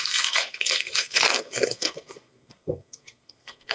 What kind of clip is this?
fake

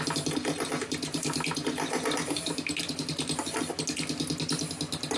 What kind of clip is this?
real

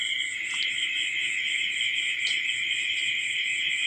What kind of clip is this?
real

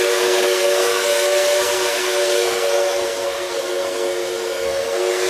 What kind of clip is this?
fake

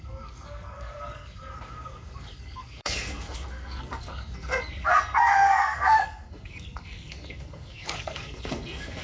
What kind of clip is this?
fake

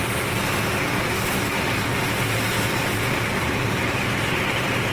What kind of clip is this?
real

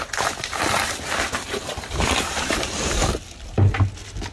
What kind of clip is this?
real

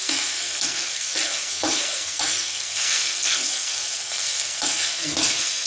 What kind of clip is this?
fake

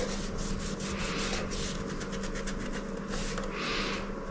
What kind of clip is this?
real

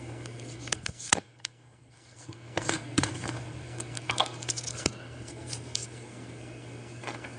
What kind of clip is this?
fake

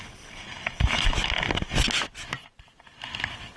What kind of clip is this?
real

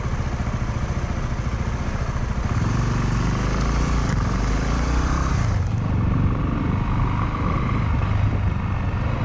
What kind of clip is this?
real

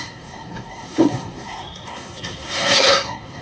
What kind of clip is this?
fake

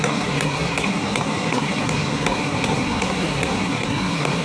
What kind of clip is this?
fake